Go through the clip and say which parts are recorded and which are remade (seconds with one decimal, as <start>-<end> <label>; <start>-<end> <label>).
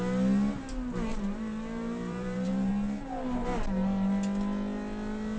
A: 0.0-1.1 recorded; 1.1-2.7 remade; 2.7-5.4 recorded